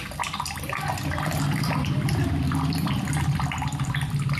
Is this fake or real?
fake